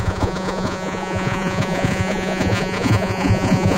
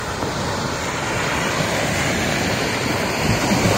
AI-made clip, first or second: first